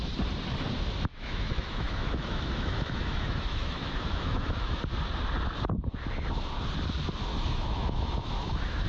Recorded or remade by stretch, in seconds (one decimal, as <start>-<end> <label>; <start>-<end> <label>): 0.0-1.1 recorded; 1.1-4.8 remade; 4.8-7.3 recorded; 7.3-8.9 remade